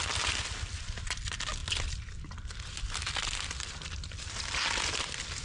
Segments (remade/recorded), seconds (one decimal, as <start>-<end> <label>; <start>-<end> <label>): 0.0-5.4 recorded